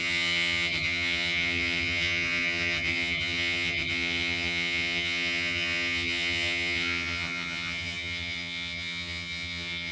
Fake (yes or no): yes